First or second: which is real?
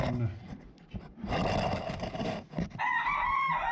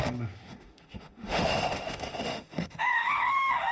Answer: first